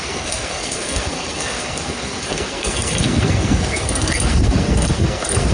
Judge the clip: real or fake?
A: fake